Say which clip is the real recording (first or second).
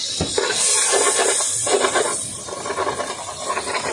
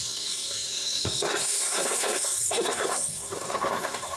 first